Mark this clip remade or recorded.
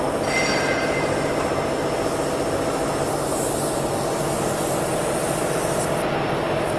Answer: recorded